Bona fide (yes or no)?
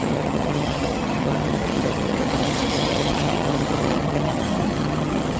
no